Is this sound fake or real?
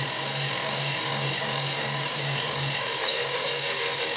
fake